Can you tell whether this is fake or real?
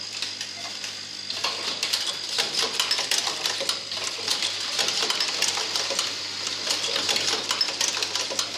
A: real